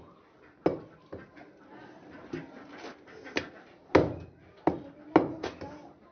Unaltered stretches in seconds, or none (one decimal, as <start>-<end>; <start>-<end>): 0.0-6.1

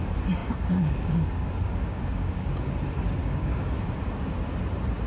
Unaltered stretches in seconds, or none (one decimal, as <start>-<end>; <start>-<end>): 0.0-0.4; 1.5-1.9; 2.5-3.2; 3.8-5.1

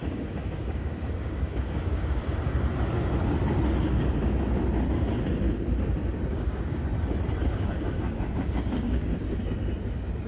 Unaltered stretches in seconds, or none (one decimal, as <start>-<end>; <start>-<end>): 2.2-6.3; 6.8-7.4; 9.1-10.3